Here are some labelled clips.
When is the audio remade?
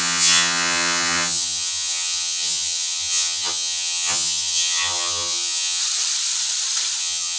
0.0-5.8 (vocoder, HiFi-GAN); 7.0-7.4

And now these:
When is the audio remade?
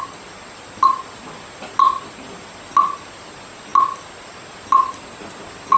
none